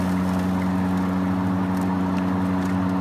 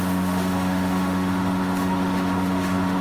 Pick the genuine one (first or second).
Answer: first